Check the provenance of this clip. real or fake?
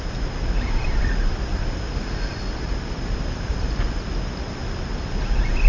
real